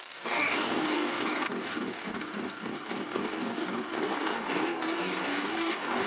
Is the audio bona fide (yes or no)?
no